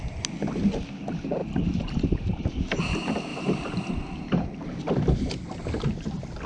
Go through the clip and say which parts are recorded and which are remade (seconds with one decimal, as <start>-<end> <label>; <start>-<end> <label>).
0.0-1.4 recorded; 1.4-2.8 remade; 2.8-3.3 recorded; 3.3-3.9 remade; 3.9-6.5 recorded